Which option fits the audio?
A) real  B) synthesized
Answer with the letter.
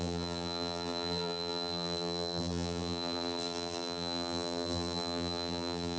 B